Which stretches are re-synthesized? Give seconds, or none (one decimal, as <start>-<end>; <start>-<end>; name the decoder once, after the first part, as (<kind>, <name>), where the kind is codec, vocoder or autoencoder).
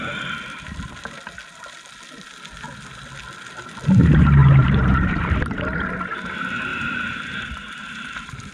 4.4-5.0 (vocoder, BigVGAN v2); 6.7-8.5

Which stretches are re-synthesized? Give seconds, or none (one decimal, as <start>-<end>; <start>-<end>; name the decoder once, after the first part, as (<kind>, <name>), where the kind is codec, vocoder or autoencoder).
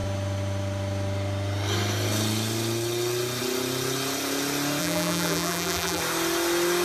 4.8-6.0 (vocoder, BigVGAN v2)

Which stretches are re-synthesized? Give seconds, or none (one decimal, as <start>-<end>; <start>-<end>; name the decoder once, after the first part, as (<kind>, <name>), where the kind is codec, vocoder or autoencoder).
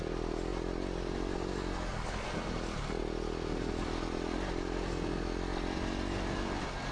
none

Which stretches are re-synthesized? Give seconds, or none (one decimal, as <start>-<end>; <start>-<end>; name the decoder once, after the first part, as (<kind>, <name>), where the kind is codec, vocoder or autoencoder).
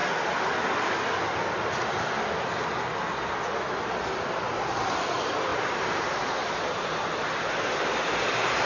5.5-8.7 (vocoder, BigVGAN v2)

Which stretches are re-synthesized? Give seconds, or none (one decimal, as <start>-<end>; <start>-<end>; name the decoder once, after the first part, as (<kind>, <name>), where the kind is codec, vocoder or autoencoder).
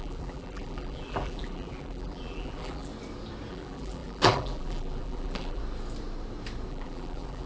0.0-2.9 (vocoder, BigVGAN v2); 3.5-5.6; 6.7-7.5